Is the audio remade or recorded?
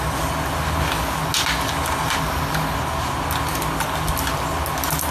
recorded